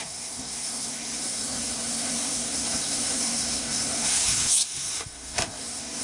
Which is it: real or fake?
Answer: fake